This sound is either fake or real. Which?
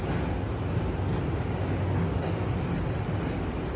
real